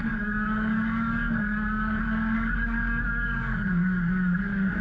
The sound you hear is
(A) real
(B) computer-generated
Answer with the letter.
B